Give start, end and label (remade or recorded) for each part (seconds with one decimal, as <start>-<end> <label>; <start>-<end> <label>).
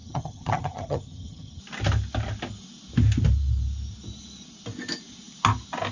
0.0-1.6 remade; 1.6-5.9 recorded